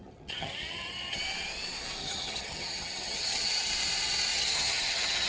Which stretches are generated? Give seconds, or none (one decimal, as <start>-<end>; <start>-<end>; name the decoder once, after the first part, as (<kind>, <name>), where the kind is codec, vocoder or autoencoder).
0.0-1.2 (vocoder, HiFi-GAN); 2.0-3.7; 4.3-5.3